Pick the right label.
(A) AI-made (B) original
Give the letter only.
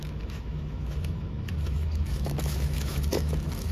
A